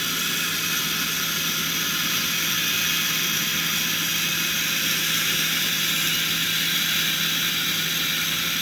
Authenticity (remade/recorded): recorded